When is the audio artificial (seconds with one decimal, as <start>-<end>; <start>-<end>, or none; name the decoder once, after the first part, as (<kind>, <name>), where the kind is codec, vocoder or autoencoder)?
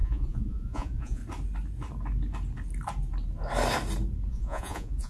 0.0-1.2 (vocoder, Vocos); 4.3-5.1